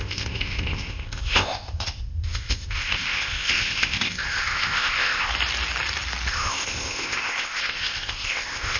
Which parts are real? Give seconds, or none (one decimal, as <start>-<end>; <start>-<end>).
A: 5.3-6.3